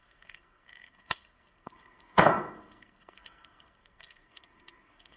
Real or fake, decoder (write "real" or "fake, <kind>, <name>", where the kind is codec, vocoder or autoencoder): fake, codec, SNAC